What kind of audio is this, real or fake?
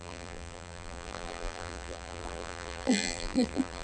fake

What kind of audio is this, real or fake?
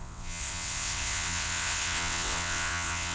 fake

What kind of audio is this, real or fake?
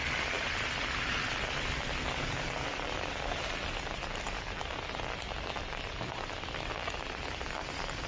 real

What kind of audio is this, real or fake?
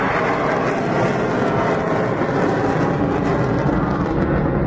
real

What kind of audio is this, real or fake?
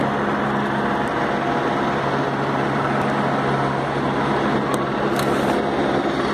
real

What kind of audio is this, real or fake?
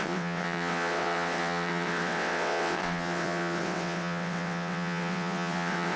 fake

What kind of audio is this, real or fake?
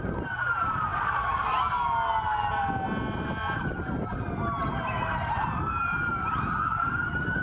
real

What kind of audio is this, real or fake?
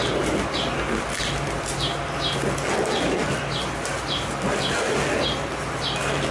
real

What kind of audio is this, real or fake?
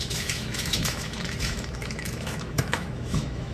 fake